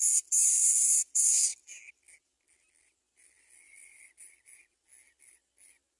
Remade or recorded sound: recorded